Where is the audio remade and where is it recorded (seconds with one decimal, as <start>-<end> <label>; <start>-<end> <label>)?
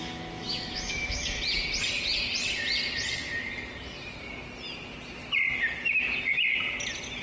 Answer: 0.0-1.4 remade; 1.4-7.2 recorded